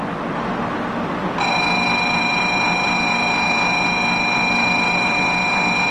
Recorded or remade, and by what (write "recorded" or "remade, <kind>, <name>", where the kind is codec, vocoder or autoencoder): recorded